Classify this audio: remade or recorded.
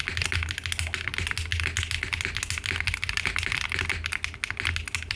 recorded